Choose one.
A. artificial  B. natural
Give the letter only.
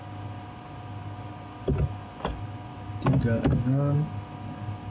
B